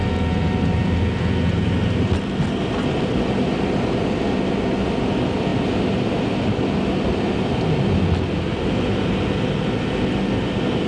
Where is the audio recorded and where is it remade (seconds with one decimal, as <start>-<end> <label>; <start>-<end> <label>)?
0.0-10.9 recorded